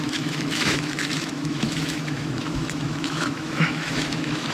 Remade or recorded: remade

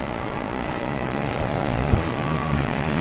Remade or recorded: remade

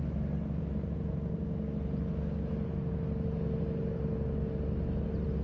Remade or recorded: recorded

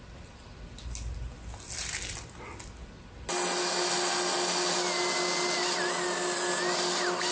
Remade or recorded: recorded